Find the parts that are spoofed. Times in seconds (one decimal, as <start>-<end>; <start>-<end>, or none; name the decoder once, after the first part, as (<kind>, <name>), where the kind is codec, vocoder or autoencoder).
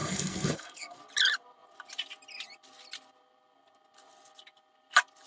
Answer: 0.0-1.0 (codec, SNAC)